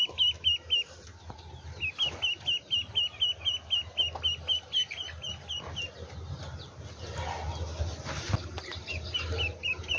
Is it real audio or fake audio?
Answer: real